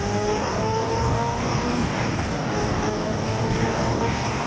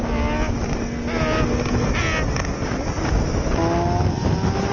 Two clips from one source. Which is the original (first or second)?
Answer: second